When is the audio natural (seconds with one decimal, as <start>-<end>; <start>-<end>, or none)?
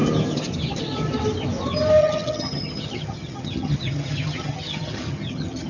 0.0-2.0